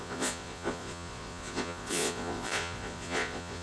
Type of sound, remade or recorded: remade